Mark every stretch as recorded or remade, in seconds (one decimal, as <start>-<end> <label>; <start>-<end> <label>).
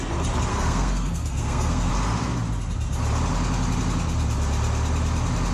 0.0-0.5 recorded; 0.5-1.9 remade; 1.9-5.5 recorded